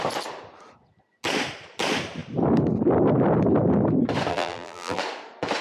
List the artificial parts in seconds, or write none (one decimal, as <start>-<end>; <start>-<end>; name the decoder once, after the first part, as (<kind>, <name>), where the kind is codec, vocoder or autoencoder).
4.3-5.0 (vocoder, BigVGAN v2)